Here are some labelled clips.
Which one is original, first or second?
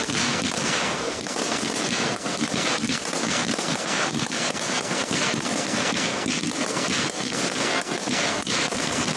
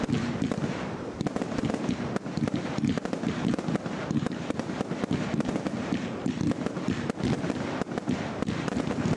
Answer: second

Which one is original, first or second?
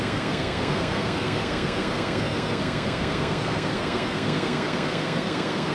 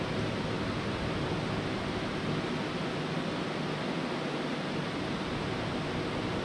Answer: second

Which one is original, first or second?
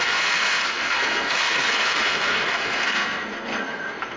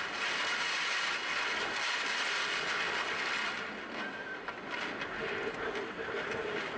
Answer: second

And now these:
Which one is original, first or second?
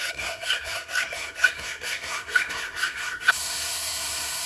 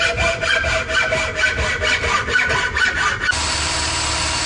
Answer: second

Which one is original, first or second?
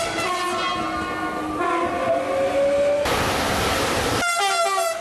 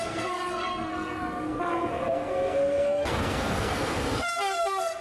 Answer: first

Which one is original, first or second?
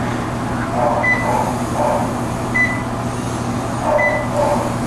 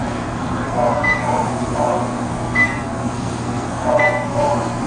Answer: first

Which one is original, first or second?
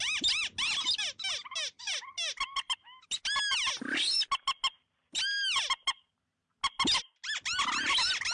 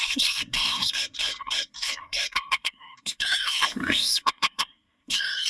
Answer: first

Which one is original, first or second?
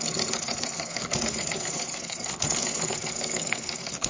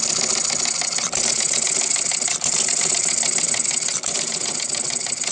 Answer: second